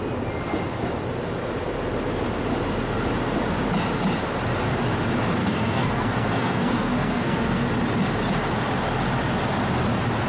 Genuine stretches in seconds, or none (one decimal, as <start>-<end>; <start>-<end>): 0.0-5.4; 7.7-10.3